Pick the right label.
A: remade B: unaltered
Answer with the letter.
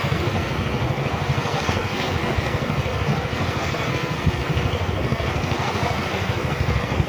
A